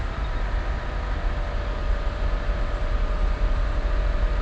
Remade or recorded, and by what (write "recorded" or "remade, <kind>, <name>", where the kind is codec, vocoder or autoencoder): recorded